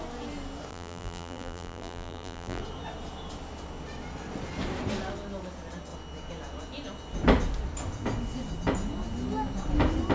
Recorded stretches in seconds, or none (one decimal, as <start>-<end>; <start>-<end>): 0.0-0.7; 2.6-10.1